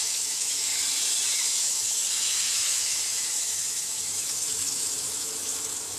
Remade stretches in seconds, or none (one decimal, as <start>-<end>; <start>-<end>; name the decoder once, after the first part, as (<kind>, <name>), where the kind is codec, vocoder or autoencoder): 0.0-0.7 (autoencoder, DAC-VAE); 1.6-6.0